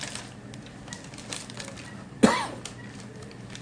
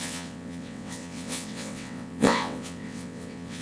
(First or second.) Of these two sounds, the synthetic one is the second